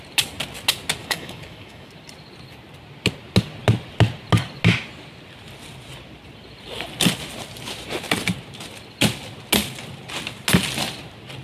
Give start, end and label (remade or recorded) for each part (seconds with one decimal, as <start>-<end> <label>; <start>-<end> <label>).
0.0-1.0 recorded; 1.0-1.9 remade; 1.9-11.4 recorded